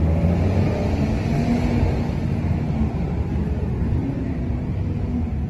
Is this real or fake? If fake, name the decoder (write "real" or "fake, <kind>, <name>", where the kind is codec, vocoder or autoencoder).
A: real